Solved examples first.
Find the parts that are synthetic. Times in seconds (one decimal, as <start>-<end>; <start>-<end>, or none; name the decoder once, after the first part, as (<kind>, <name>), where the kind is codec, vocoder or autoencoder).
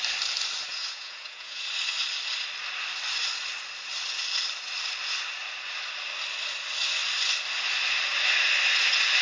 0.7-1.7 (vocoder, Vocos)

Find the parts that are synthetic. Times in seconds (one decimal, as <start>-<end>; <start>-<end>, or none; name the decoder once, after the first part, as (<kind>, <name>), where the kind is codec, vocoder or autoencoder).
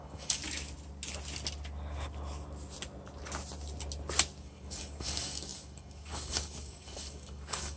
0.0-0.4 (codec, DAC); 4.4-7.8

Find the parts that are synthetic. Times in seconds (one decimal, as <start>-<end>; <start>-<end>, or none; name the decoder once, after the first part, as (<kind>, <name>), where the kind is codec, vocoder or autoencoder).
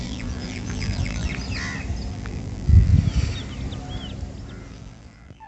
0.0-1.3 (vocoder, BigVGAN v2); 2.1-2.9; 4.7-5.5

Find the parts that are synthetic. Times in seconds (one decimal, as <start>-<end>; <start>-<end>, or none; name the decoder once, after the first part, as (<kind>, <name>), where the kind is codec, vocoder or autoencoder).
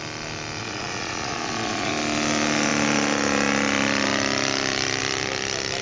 0.6-1.9 (vocoder, Vocos)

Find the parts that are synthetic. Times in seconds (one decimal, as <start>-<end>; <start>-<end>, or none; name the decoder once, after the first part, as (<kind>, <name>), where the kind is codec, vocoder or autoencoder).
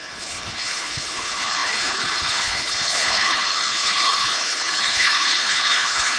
0.0-6.2 (codec, HILCodec)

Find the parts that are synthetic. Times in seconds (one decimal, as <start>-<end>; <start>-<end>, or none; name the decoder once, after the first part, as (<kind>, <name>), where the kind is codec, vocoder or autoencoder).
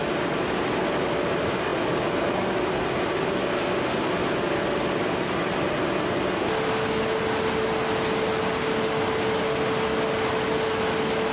none